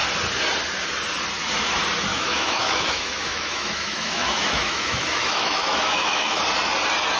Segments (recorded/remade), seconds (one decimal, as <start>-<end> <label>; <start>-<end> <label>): 0.0-2.1 recorded; 2.1-6.4 remade; 6.4-7.2 recorded